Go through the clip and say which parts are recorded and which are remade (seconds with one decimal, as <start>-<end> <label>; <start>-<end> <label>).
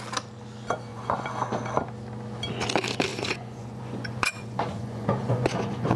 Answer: 0.0-0.9 recorded; 0.9-1.5 remade; 1.5-3.1 recorded; 3.1-6.0 remade